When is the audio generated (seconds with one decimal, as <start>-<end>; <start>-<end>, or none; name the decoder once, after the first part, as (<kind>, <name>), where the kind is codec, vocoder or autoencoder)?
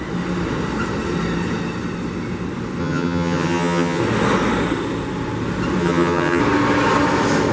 2.8-4.0 (vocoder, HiFi-GAN); 5.8-6.4